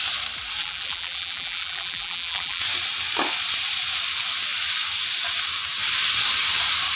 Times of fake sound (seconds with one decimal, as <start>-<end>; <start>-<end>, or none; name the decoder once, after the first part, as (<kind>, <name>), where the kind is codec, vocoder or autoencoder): 0.6-2.6 (vocoder, BigVGAN v2)

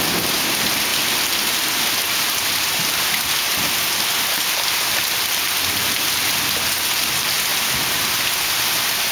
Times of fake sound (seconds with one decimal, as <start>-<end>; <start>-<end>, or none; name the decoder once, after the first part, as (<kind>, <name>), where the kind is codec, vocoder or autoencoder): none

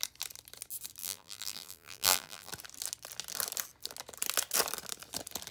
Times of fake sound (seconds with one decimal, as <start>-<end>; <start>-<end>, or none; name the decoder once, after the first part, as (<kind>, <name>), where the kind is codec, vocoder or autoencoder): 1.0-2.5 (vocoder, BigVGAN v2)

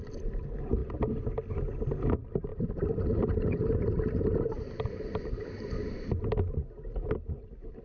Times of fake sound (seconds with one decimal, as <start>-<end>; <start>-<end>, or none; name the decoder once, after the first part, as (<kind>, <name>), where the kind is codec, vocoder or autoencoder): 2.5-5.7 (vocoder, BigVGAN v2)

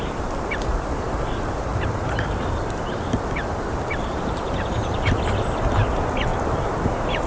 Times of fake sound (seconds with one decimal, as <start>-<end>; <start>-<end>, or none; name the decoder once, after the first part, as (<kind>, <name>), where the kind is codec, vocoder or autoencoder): 1.7-2.8 (vocoder, BigVGAN v2); 4.1-5.1; 6.3-7.3

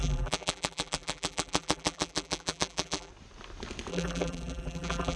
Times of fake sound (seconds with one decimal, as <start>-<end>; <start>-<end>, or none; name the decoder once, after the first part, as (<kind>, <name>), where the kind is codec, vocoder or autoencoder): 0.0-3.1 (vocoder, BigVGAN v2); 3.9-5.2

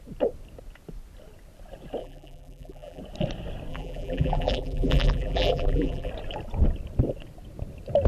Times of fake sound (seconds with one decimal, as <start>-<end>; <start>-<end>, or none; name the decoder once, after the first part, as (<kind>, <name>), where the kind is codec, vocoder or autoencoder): 2.0-3.0 (vocoder, BigVGAN v2); 3.7-6.1